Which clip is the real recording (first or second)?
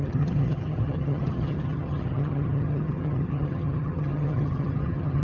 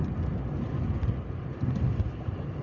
second